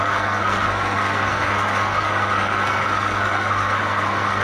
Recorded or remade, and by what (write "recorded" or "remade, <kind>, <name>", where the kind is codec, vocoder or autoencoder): remade, codec, SNAC